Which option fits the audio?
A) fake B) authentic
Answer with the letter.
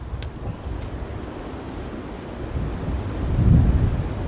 B